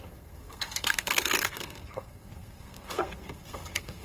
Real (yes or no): no